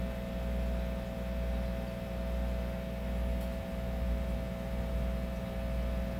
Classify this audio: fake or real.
real